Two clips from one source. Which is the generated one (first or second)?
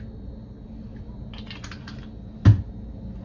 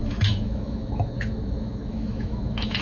second